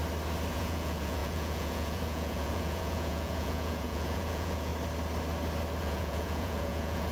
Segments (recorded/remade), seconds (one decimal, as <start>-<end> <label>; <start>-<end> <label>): 0.0-0.5 recorded; 0.5-4.7 remade; 4.7-5.8 recorded; 5.8-7.1 remade